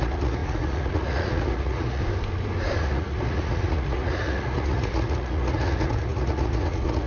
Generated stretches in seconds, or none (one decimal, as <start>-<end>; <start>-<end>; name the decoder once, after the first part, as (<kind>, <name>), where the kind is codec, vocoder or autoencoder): 0.0-2.0 (vocoder, Vocos); 2.8-7.1